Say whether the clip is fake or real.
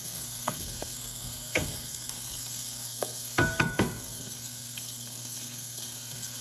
fake